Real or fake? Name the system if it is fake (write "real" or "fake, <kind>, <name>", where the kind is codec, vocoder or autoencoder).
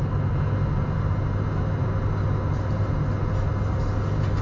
real